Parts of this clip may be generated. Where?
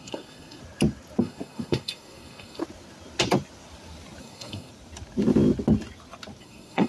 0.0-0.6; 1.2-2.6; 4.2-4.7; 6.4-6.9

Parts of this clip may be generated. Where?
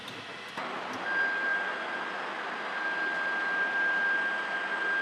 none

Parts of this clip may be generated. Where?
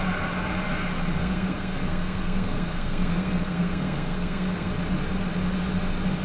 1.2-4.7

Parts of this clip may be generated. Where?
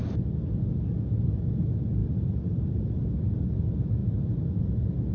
none